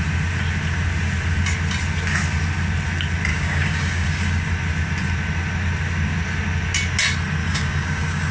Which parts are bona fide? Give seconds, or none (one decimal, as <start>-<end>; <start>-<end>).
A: 0.0-3.3; 4.5-7.4